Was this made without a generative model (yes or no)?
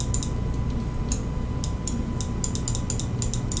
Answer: yes